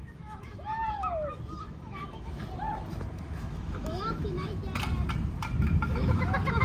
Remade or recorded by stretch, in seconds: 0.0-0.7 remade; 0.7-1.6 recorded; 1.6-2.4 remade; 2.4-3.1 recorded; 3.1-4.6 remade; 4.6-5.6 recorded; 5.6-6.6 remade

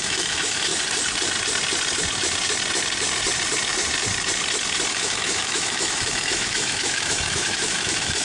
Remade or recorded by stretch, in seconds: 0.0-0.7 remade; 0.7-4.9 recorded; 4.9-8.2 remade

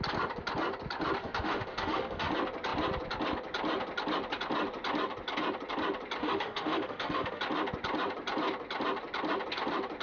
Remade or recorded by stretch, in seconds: 0.0-1.2 recorded; 1.2-2.3 remade; 2.3-6.2 recorded; 6.2-7.4 remade; 7.4-10.0 recorded

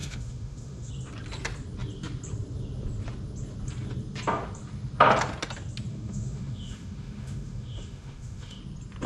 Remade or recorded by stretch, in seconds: 0.0-0.9 remade; 0.9-5.9 recorded; 5.9-8.6 remade; 8.6-9.1 recorded

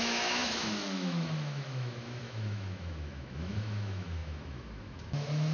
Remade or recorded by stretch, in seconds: 0.0-5.5 remade